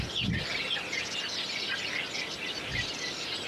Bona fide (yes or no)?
yes